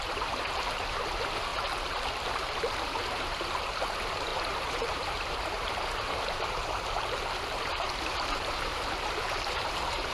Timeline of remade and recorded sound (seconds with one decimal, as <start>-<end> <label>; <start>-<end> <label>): 0.0-1.5 remade; 1.5-2.3 recorded; 2.3-10.1 remade